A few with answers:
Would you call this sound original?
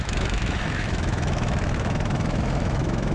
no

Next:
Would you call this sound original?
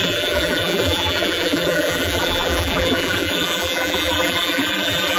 no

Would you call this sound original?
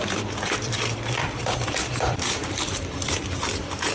no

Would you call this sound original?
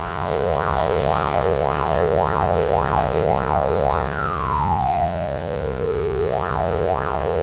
no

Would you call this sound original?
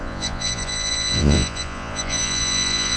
no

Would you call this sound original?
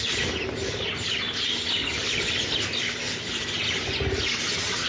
yes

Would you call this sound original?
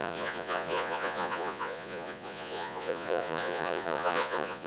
no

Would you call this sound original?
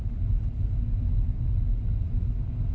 yes